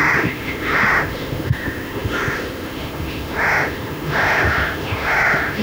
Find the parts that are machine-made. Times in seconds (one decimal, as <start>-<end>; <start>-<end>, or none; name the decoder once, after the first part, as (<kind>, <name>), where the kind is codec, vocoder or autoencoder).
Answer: 0.0-5.6 (autoencoder, DAC-VAE)

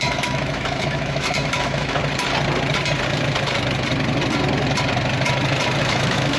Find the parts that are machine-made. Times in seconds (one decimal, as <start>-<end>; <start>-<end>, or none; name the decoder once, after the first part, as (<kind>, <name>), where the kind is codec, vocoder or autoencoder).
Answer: 0.0-2.0 (autoencoder, DAC-VAE); 5.8-6.4